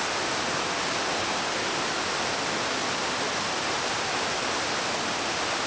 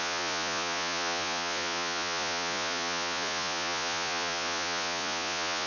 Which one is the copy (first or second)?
second